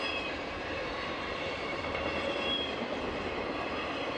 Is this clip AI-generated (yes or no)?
yes